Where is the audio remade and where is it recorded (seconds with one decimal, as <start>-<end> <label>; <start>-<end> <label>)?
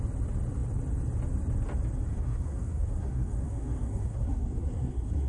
0.0-2.1 recorded; 2.1-5.3 remade